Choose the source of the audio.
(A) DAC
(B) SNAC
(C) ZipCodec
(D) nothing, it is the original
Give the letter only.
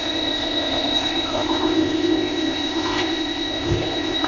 C